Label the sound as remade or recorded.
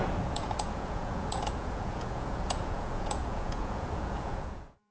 remade